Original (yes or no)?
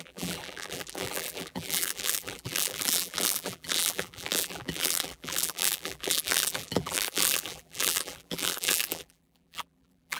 no